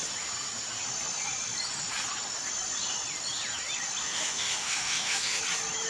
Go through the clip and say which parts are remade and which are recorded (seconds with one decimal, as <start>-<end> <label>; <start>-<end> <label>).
0.0-4.0 recorded; 4.0-5.4 remade; 5.4-5.9 recorded